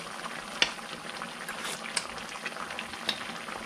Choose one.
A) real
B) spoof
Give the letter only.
A